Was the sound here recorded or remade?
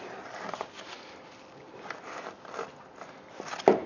recorded